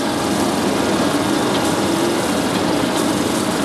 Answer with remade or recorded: recorded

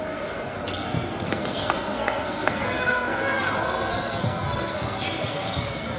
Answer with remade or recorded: remade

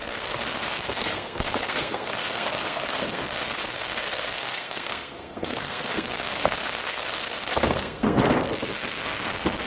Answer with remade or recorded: remade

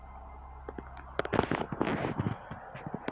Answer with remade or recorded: recorded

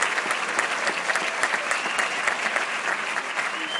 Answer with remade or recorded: recorded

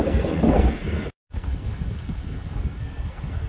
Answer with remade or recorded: remade